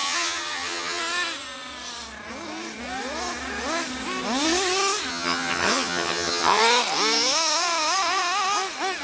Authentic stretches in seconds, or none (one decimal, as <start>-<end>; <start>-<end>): 1.0-5.1; 6.6-9.0